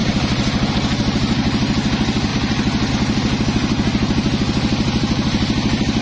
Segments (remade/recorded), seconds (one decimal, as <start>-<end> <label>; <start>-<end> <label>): 0.0-6.0 recorded